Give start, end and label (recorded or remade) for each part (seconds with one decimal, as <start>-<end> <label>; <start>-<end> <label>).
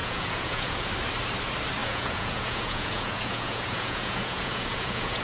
0.0-0.8 remade; 0.8-1.8 recorded; 1.8-5.2 remade